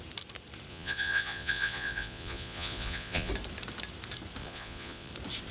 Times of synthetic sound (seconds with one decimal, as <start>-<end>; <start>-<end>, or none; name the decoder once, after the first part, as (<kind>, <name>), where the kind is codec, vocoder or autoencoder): 0.7-3.3 (vocoder, Vocos); 4.4-5.1